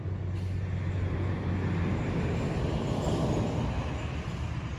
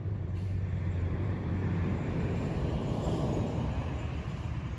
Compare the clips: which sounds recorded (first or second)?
first